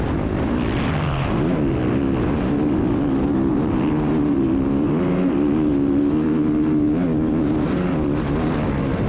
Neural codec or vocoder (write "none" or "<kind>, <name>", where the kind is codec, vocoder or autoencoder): none